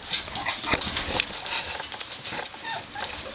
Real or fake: real